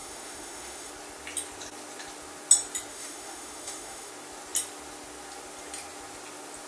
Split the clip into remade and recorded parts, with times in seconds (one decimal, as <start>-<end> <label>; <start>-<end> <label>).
0.0-0.9 remade; 0.9-2.9 recorded; 2.9-4.1 remade; 4.1-6.7 recorded